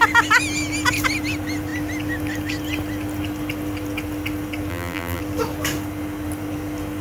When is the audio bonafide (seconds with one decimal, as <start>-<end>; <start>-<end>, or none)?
0.0-4.7; 5.2-7.0